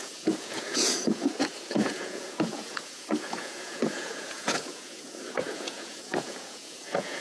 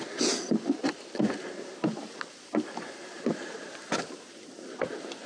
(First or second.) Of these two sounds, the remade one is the first